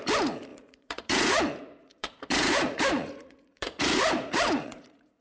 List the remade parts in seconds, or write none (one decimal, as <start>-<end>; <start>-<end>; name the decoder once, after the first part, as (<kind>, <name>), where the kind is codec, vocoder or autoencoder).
0.5-1.4 (vocoder, Vocos); 1.8-5.2